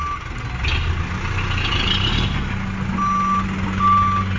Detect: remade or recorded recorded